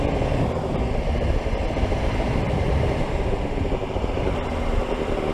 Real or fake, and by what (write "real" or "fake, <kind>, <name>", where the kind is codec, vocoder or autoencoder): fake, vocoder, BigVGAN v2